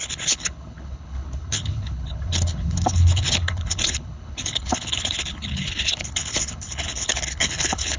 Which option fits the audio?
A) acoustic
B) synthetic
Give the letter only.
B